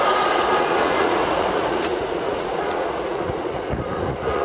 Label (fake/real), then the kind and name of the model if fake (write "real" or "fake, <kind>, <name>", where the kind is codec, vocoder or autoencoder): fake, vocoder, Vocos